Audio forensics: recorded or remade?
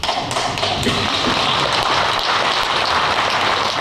recorded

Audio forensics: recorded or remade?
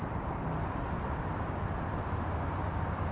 recorded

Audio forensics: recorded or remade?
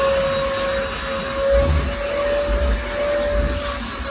recorded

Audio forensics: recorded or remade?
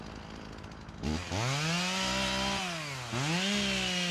recorded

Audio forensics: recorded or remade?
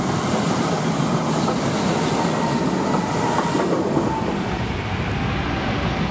recorded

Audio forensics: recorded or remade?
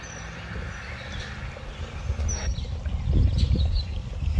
recorded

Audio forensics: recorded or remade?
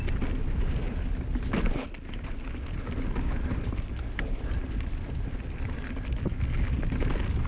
recorded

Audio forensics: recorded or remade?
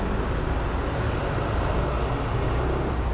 recorded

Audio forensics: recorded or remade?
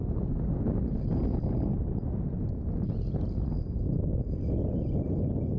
recorded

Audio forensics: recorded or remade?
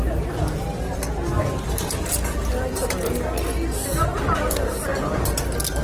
recorded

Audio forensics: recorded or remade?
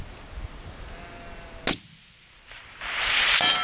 recorded